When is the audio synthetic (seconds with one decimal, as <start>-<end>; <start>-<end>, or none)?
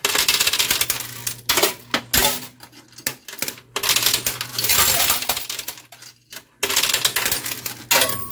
none